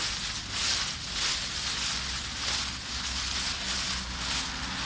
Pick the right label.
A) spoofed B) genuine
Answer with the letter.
B